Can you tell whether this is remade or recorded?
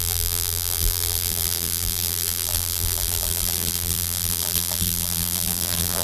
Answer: remade